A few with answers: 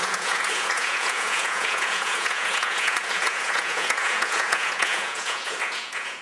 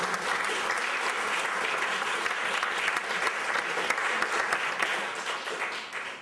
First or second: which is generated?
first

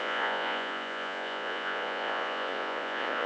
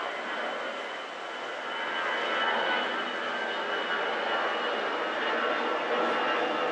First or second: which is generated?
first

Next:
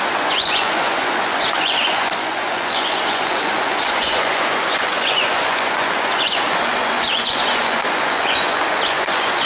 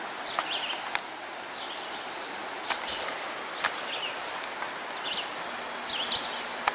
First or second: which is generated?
first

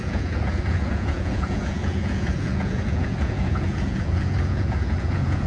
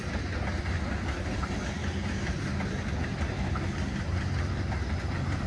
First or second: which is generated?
first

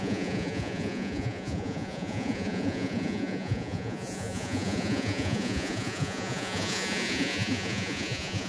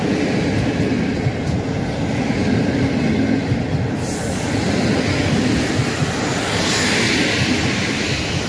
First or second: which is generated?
first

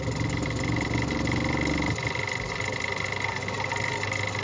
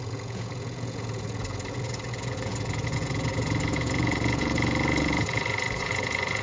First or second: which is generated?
second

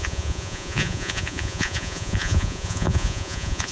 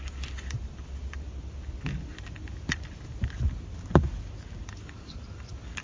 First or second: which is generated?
first